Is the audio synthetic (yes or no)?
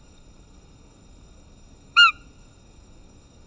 yes